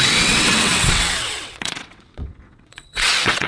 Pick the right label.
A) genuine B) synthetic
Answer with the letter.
B